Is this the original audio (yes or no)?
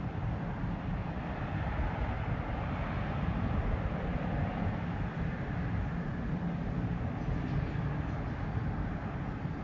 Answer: yes